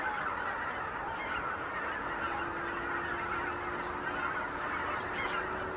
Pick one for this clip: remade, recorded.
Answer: recorded